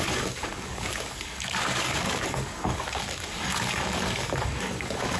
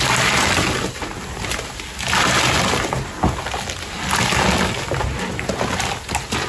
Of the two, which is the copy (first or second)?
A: first